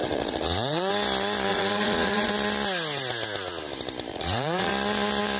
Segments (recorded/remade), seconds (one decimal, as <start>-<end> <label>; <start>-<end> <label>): 0.0-0.9 remade; 0.9-1.5 recorded; 1.5-2.3 remade; 2.3-4.1 recorded; 4.1-4.7 remade; 4.7-5.4 recorded